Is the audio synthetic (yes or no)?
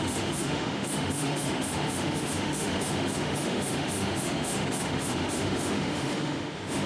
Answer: yes